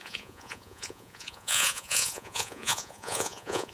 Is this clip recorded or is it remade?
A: remade